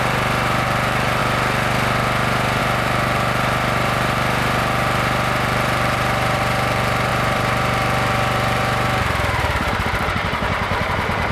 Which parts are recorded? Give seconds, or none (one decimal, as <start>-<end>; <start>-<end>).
1.2-2.6